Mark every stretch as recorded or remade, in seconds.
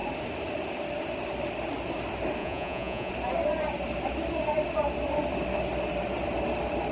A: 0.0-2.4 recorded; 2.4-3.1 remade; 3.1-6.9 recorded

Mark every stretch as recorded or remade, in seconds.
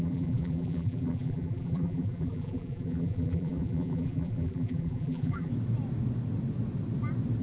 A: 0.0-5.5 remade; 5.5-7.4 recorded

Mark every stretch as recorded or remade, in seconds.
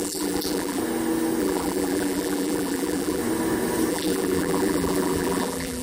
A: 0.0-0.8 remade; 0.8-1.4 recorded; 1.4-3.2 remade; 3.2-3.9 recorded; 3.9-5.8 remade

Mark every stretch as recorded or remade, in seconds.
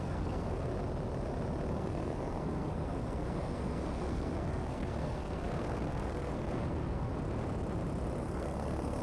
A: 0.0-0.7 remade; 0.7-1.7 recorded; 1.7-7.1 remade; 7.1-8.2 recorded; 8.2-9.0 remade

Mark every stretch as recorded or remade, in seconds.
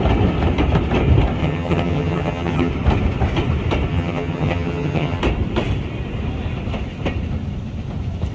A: 0.0-1.4 recorded; 1.4-2.7 remade; 2.7-3.9 recorded; 3.9-5.2 remade; 5.2-8.3 recorded